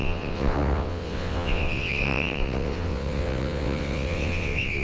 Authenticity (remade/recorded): remade